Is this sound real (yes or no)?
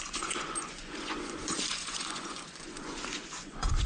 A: no